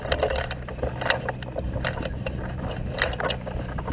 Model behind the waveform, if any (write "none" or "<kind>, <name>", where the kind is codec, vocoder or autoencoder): none